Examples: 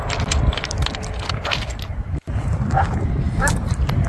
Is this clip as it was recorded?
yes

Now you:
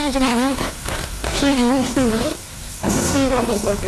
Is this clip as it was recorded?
no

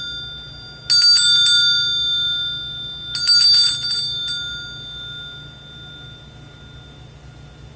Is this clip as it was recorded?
yes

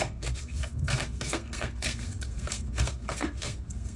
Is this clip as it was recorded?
no